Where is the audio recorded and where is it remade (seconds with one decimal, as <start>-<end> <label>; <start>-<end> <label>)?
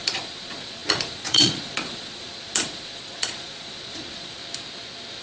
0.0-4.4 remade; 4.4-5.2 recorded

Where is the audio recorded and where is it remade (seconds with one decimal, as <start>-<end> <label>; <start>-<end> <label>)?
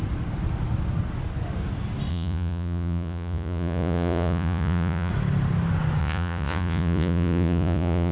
0.0-2.1 recorded; 2.1-5.1 remade; 5.1-6.0 recorded; 6.0-8.1 remade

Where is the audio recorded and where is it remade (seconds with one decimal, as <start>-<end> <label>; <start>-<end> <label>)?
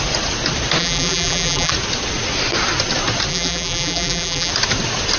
0.0-0.8 recorded; 0.8-1.7 remade; 1.7-3.3 recorded; 3.3-4.5 remade; 4.5-5.2 recorded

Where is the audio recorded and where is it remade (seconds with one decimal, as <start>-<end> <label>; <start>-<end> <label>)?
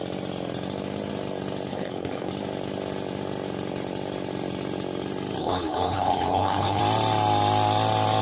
0.0-1.7 recorded; 1.7-2.3 remade; 2.3-5.4 recorded; 5.4-6.8 remade; 6.8-8.2 recorded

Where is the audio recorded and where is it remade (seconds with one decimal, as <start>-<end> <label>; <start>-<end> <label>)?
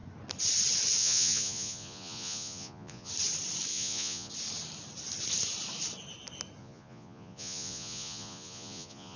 0.0-1.0 recorded; 1.0-3.1 remade; 3.1-3.7 recorded; 3.7-4.3 remade; 4.3-6.6 recorded; 6.6-9.2 remade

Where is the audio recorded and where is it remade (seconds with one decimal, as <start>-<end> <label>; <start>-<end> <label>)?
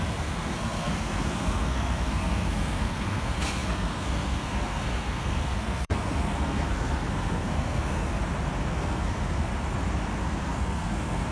0.0-8.1 remade; 8.1-8.7 recorded; 8.7-9.5 remade; 9.5-10.2 recorded; 10.2-11.3 remade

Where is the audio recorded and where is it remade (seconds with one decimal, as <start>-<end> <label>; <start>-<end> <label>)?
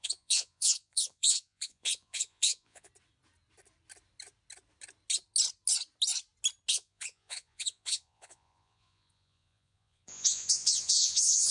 0.0-2.9 remade; 2.9-6.7 recorded; 6.7-11.5 remade